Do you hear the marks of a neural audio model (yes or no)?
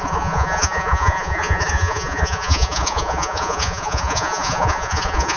yes